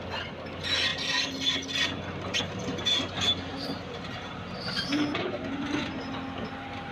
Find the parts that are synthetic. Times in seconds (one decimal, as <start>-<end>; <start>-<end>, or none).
3.5-5.4